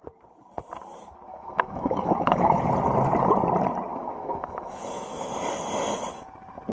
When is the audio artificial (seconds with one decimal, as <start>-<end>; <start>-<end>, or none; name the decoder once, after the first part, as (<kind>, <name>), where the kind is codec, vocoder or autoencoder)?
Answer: 1.3-2.6 (autoencoder, DAC-VAE); 3.9-5.1